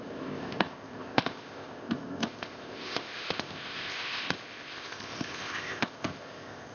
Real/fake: fake